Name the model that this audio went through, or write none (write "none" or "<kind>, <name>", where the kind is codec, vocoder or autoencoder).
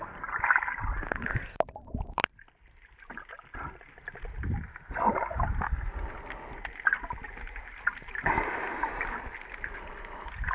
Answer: none